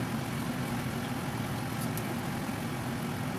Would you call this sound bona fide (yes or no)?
yes